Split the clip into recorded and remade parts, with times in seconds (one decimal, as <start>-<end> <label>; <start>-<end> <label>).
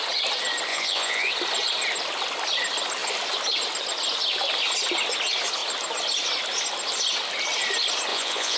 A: 0.0-0.7 recorded; 0.7-1.3 remade; 1.3-8.1 recorded; 8.1-8.6 remade